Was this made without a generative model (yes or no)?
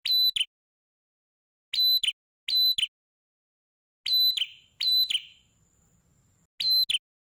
yes